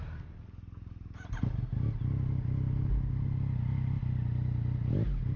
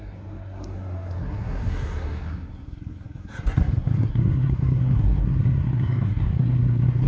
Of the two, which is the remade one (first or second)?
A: second